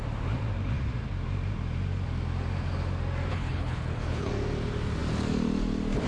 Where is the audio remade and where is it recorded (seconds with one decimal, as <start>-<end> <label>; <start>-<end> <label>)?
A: 0.0-3.3 recorded; 3.3-4.3 remade; 4.3-6.1 recorded